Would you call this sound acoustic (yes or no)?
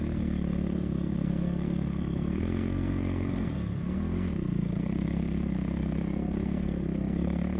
no